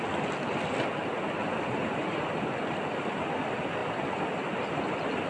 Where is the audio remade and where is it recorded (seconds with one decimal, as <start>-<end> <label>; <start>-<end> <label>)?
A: 0.0-5.3 recorded